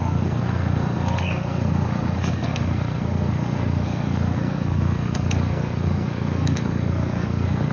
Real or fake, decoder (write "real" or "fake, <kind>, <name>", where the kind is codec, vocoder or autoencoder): fake, codec, SNAC